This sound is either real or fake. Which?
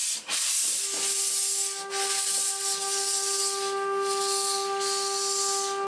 real